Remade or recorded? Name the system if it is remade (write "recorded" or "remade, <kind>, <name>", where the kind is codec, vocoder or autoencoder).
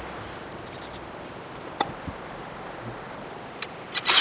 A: recorded